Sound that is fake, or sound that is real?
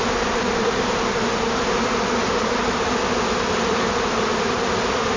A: real